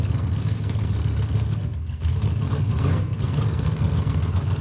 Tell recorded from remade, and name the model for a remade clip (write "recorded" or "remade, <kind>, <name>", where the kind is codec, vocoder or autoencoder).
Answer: remade, codec, SNAC